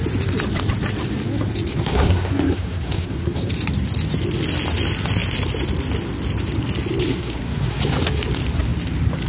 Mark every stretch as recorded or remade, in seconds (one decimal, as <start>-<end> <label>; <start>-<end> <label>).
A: 0.0-1.7 recorded; 1.7-3.5 remade; 3.5-7.1 recorded; 7.1-7.8 remade; 7.8-9.3 recorded